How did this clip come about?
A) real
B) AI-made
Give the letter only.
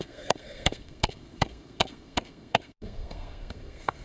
B